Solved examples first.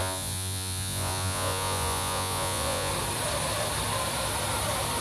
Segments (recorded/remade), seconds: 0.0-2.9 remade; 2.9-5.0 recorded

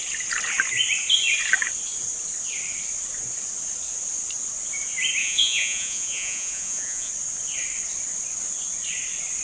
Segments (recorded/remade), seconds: 0.0-5.2 recorded; 5.2-7.1 remade; 7.1-9.4 recorded

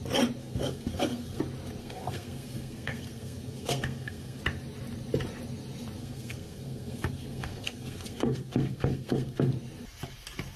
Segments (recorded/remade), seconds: 0.0-0.4 recorded; 0.4-1.4 remade; 1.4-1.8 recorded; 1.8-4.4 remade; 4.4-6.0 recorded; 6.0-9.5 remade; 9.5-10.6 recorded

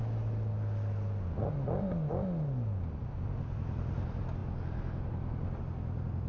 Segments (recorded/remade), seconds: 0.0-6.3 recorded

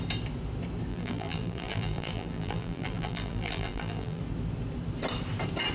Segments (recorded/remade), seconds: 0.0-0.9 recorded; 0.9-4.2 remade; 4.2-5.7 recorded

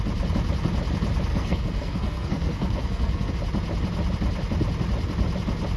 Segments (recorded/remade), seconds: 0.0-1.3 recorded; 1.3-3.3 remade; 3.3-5.8 recorded

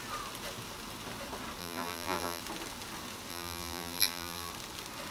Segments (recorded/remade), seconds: 0.0-1.6 recorded; 1.6-2.4 remade; 2.4-3.3 recorded; 3.3-4.5 remade; 4.5-5.1 recorded